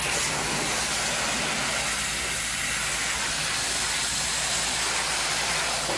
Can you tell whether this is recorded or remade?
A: recorded